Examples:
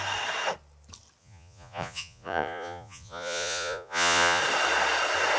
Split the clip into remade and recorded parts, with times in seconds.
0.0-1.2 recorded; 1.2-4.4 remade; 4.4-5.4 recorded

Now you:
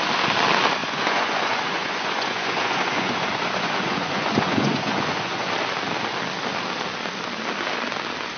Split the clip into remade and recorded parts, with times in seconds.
0.0-0.8 recorded; 0.8-5.5 remade; 5.5-8.4 recorded

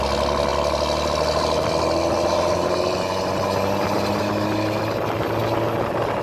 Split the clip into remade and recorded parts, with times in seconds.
0.0-6.2 recorded

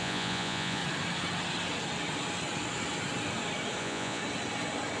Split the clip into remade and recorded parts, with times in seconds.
0.0-0.8 remade; 0.8-3.8 recorded; 3.8-4.2 remade; 4.2-5.0 recorded

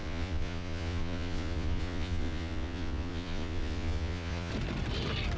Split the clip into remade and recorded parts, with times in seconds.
0.0-4.5 remade; 4.5-5.4 recorded